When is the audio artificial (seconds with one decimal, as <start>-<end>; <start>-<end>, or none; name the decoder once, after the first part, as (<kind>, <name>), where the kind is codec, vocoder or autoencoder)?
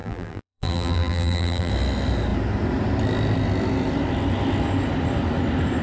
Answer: 0.0-1.7 (vocoder, BigVGAN v2)